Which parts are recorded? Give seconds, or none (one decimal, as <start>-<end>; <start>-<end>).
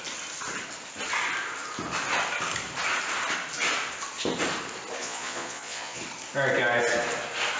0.0-5.0; 6.0-7.6